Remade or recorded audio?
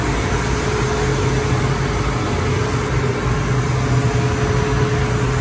recorded